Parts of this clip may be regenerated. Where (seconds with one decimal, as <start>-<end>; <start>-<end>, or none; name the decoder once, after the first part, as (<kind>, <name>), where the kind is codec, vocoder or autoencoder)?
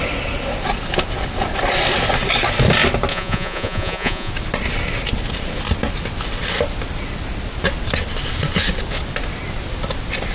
3.1-4.3 (vocoder, Vocos)